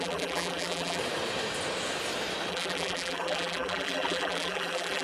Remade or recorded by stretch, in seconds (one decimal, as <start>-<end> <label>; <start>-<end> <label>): 0.0-1.0 remade; 1.0-2.5 recorded; 2.5-5.0 remade